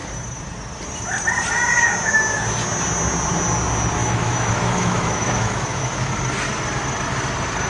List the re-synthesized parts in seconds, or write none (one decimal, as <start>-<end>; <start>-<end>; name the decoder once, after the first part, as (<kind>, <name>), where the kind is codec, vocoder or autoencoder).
4.0-6.1 (autoencoder, DAC-VAE)